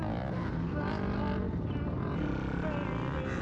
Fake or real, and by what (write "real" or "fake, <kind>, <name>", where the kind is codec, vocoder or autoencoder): real